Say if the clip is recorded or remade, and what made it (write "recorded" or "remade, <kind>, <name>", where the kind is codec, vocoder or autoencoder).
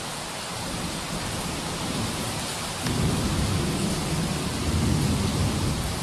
remade, vocoder, BigVGAN v2